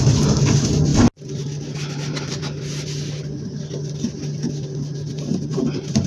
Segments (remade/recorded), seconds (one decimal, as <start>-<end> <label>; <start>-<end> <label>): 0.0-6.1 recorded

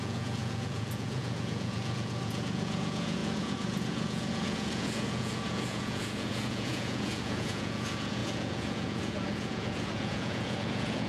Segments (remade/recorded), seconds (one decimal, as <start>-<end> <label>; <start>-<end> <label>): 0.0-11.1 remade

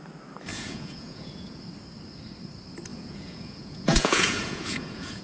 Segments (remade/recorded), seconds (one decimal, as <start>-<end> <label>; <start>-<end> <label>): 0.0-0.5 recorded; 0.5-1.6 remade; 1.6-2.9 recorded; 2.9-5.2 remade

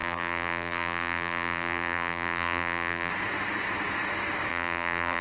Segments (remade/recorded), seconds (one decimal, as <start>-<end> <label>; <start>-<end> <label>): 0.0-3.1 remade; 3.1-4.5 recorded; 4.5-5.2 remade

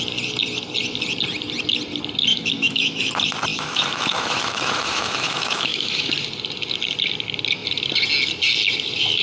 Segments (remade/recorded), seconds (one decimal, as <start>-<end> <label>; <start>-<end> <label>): 0.0-2.3 recorded; 2.3-3.1 remade; 3.1-3.5 recorded; 3.5-6.1 remade; 6.1-9.2 recorded